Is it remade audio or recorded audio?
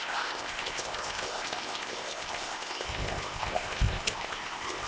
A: remade